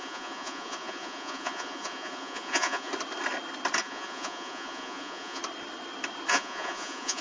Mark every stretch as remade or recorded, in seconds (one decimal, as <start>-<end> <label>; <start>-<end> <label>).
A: 0.0-2.9 remade; 2.9-3.8 recorded; 3.8-5.4 remade; 5.4-6.3 recorded; 6.3-7.2 remade